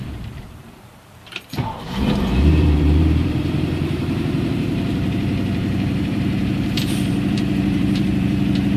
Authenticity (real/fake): fake